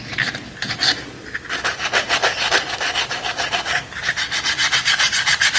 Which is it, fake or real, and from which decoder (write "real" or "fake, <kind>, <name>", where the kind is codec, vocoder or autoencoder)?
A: real